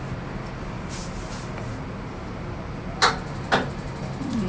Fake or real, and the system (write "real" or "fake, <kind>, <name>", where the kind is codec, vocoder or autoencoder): real